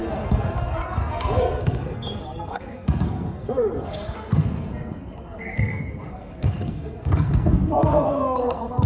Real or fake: fake